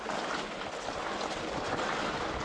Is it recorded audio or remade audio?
remade